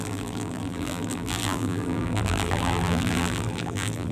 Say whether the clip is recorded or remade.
remade